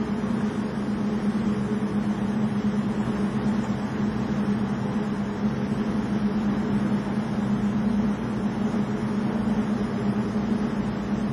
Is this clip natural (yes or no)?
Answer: yes